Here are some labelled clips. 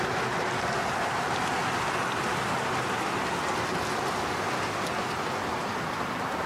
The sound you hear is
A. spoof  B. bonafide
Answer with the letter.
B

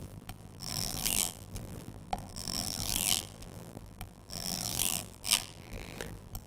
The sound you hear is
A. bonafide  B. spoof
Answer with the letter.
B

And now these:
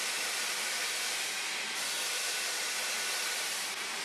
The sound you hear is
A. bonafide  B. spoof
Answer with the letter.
A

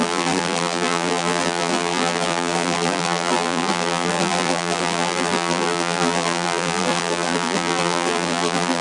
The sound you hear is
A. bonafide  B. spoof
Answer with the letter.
B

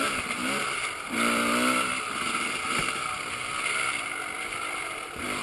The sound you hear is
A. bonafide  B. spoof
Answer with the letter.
B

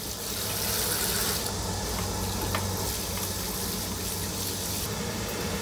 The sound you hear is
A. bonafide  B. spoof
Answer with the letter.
A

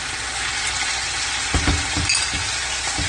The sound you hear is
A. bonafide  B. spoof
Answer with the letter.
A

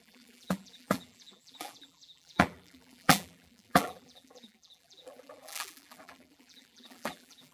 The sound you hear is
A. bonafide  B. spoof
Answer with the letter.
B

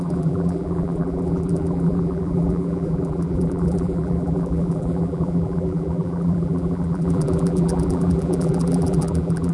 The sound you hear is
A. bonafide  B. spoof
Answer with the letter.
B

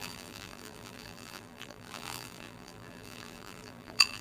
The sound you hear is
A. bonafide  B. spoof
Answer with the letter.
B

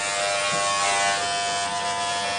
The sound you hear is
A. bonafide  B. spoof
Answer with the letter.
A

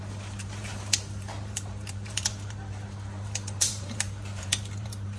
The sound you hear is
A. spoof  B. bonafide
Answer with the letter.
A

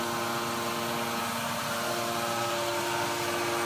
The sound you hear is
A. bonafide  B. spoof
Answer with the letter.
A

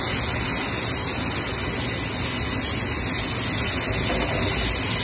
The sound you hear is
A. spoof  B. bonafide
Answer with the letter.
B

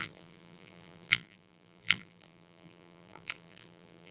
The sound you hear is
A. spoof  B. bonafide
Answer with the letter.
A